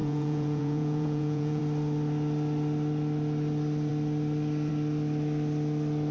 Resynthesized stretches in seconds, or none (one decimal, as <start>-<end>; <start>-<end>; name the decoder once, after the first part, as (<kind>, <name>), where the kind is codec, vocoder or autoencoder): 0.0-1.6 (vocoder, Vocos)